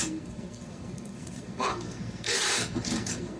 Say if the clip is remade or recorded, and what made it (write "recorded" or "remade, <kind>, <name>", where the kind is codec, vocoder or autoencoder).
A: remade, codec, SNAC